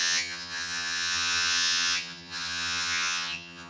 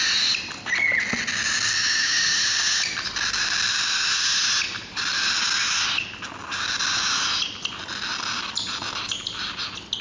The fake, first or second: first